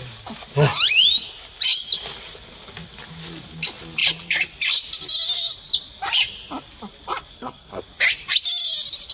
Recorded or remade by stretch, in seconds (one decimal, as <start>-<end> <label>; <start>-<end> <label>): 0.0-7.3 recorded; 7.3-7.8 remade; 7.8-9.1 recorded